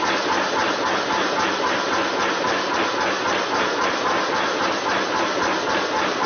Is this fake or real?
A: real